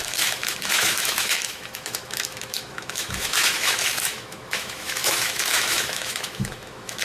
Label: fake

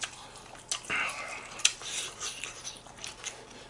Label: real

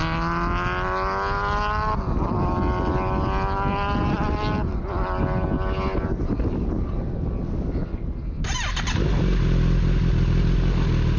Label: real